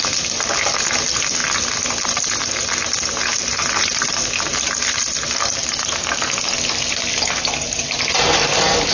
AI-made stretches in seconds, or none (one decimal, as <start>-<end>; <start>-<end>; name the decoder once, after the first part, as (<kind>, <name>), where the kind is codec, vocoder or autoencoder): none